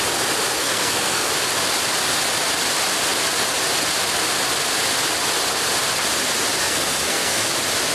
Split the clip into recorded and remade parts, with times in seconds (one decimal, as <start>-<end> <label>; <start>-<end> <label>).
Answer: 0.0-0.6 recorded; 0.6-1.3 remade; 1.3-6.6 recorded; 6.6-7.5 remade; 7.5-7.9 recorded